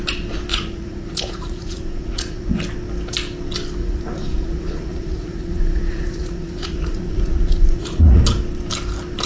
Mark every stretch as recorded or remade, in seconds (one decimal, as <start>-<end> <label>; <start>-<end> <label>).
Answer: 0.0-0.5 recorded; 0.5-2.5 remade; 2.5-3.8 recorded; 3.8-8.2 remade; 8.2-9.3 recorded